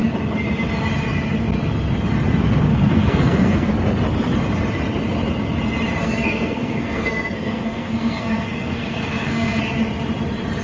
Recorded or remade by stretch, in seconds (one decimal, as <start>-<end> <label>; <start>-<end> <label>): 0.0-2.7 recorded; 2.7-3.7 remade; 3.7-6.0 recorded; 6.0-9.6 remade; 9.6-10.6 recorded